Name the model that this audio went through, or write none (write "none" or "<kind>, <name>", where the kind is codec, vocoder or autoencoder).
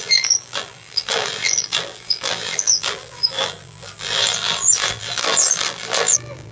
vocoder, BigVGAN v2